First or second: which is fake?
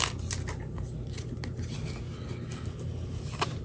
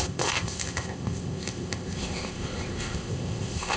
second